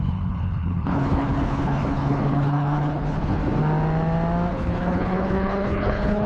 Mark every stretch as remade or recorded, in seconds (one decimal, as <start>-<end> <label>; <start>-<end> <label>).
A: 0.0-3.4 remade; 3.4-4.5 recorded; 4.5-6.3 remade